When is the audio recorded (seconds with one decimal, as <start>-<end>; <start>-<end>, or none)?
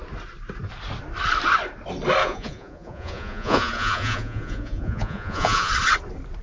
0.0-2.2; 5.7-6.4